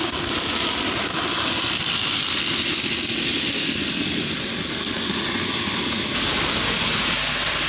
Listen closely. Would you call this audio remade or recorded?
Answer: recorded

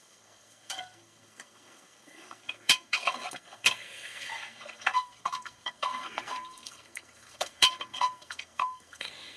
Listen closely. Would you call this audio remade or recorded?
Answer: remade